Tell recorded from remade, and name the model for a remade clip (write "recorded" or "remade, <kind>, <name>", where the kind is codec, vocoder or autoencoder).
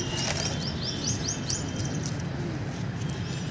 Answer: recorded